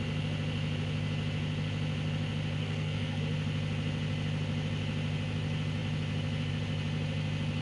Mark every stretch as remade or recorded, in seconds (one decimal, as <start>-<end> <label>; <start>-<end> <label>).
0.0-2.6 recorded; 2.6-3.2 remade; 3.2-7.6 recorded